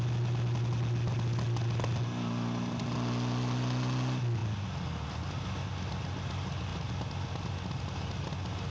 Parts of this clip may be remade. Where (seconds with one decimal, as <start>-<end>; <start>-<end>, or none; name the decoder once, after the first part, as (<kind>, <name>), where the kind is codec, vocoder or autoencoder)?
none